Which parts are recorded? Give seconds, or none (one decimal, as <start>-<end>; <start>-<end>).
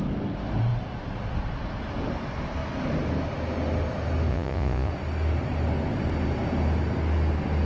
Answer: 0.0-4.3; 4.9-7.7